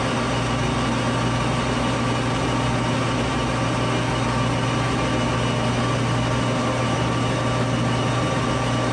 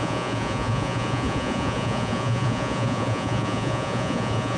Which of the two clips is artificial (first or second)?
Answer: second